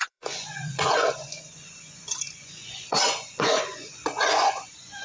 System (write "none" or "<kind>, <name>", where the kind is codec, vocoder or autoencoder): vocoder, Vocos